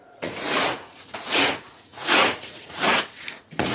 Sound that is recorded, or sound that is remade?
remade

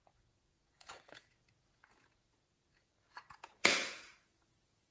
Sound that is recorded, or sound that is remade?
remade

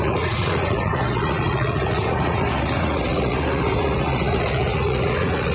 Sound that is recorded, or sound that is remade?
remade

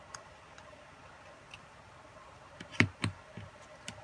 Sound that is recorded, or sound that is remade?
recorded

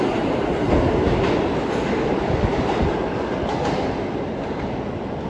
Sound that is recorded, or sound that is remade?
recorded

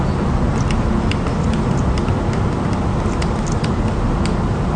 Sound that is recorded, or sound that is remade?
recorded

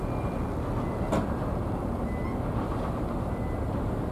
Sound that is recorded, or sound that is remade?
recorded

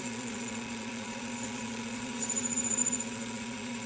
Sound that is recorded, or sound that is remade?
remade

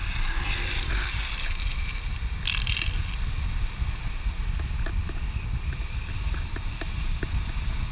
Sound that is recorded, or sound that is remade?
recorded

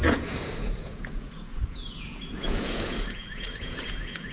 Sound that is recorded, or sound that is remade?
remade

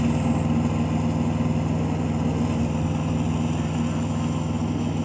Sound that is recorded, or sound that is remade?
recorded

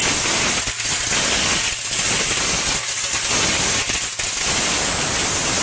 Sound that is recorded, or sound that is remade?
recorded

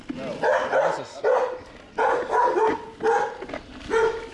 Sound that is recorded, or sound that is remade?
recorded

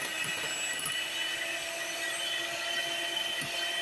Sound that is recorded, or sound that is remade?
recorded